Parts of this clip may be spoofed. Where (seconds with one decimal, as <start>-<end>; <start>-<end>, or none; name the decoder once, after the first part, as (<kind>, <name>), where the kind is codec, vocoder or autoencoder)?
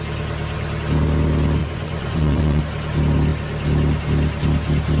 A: 1.6-2.6 (vocoder, Vocos)